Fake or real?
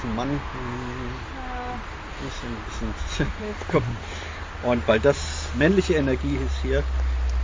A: real